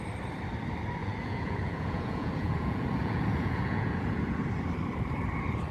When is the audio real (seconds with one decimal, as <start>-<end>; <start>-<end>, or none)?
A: 0.0-1.0; 4.4-5.7